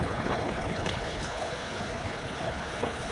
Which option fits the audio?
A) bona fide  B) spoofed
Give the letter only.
B